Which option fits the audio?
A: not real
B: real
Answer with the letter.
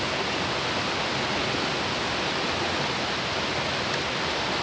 B